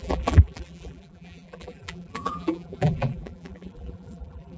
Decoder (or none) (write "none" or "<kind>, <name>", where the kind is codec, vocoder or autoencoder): vocoder, BigVGAN v2